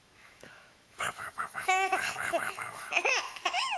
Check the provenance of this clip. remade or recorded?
remade